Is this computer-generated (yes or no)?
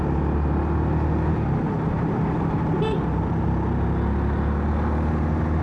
no